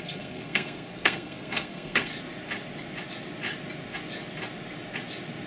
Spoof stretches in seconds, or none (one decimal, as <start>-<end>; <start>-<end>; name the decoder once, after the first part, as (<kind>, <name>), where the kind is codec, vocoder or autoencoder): 0.0-2.1 (codec, SNAC)